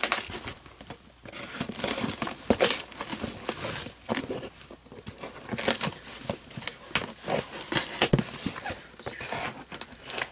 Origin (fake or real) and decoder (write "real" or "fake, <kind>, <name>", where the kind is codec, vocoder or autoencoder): real